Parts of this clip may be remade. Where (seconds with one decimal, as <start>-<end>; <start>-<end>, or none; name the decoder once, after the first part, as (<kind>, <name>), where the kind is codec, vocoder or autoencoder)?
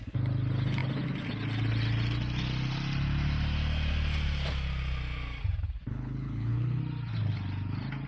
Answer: 5.9-6.8 (codec, HILCodec)